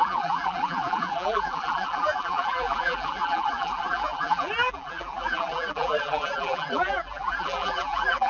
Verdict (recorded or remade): remade